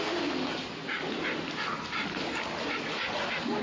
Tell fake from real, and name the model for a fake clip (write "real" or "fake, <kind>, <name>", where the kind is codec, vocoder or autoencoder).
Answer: real